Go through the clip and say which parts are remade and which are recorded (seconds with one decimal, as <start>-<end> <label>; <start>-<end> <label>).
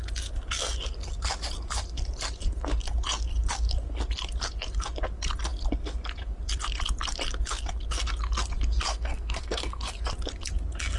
0.0-8.9 recorded; 8.9-9.9 remade; 9.9-11.0 recorded